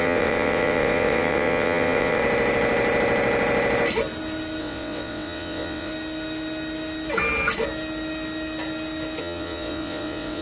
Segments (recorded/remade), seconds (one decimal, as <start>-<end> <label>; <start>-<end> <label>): 0.0-2.2 remade; 2.2-4.6 recorded; 4.6-5.9 remade; 5.9-9.2 recorded; 9.2-10.4 remade